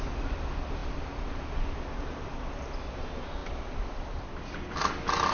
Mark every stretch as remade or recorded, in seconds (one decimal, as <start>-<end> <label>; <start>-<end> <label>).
0.0-3.4 recorded; 3.4-5.3 remade